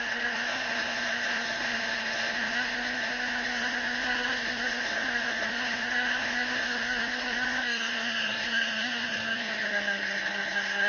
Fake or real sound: fake